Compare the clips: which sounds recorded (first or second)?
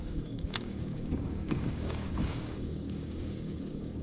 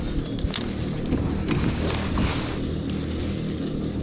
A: second